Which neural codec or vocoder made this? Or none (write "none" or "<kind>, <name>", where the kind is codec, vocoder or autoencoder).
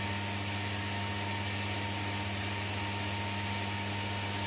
none